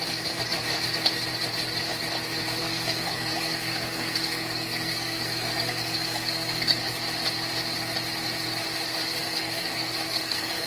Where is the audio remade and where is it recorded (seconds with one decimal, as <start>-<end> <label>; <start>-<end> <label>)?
0.0-2.6 recorded; 2.6-6.8 remade; 6.8-9.2 recorded; 9.2-10.7 remade